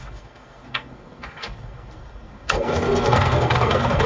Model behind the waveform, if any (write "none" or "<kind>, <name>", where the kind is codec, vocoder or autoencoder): codec, SNAC